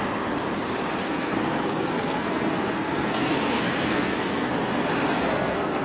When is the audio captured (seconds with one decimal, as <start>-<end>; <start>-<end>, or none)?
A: 0.0-1.0; 4.5-5.1